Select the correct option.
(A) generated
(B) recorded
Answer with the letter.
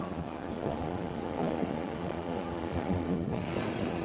A